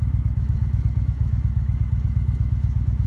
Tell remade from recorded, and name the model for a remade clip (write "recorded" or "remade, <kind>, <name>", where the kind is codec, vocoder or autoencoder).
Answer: remade, autoencoder, DAC-VAE